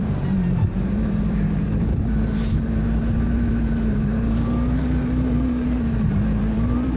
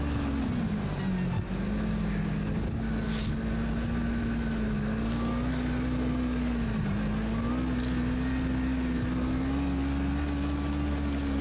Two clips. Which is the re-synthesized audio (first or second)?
first